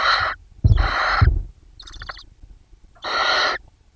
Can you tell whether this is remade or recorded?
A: recorded